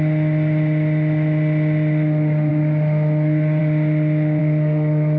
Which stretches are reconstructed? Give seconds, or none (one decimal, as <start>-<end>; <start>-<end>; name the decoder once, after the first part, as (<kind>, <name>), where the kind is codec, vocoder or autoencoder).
4.4-5.2 (codec, SNAC)